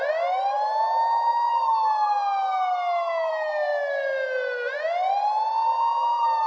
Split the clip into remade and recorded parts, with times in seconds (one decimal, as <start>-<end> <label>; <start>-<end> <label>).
0.0-6.5 recorded